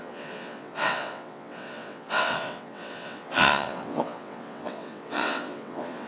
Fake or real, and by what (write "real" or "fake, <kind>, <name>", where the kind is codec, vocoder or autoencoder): fake, vocoder, WaveNeXt